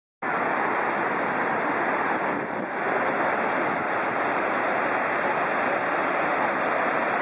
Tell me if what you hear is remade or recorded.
recorded